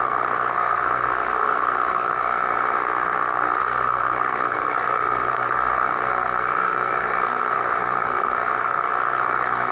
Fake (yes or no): yes